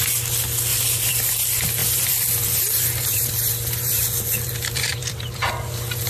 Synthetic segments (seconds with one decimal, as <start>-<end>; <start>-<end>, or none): 0.7-1.3; 1.8-5.5